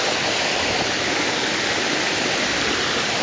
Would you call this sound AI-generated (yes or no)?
no